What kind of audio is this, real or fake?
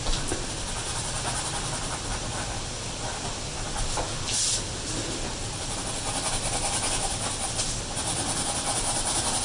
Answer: real